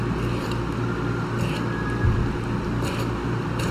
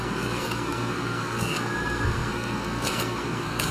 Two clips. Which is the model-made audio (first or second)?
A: second